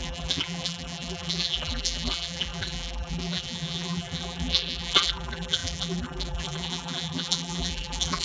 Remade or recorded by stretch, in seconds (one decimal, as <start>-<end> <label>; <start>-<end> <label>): 0.0-8.2 remade